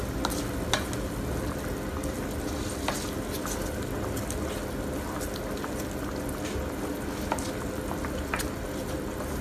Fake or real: real